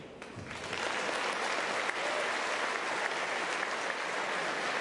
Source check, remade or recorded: recorded